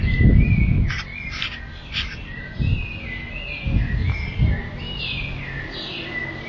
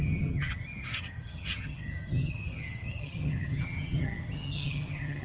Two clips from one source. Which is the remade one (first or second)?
second